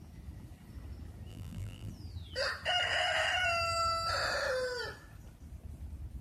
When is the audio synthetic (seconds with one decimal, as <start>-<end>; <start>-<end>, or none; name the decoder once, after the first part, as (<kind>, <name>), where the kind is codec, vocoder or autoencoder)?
1.3-1.9 (vocoder, BigVGAN v2)